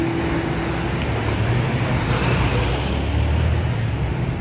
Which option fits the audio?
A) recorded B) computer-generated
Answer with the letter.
A